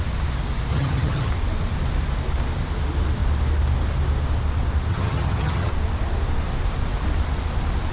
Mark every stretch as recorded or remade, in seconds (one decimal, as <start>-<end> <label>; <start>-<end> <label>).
0.0-0.7 recorded; 0.7-1.3 remade; 1.3-4.9 recorded; 4.9-5.7 remade; 5.7-7.9 recorded